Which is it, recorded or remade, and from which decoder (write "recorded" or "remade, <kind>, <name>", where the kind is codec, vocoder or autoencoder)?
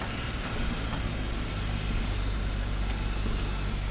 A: recorded